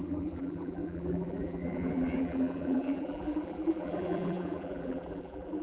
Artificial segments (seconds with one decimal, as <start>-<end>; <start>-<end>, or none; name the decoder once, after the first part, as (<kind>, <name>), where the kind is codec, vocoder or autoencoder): 0.0-5.6 (vocoder, BigVGAN v2)